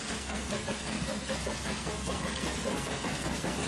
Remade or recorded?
remade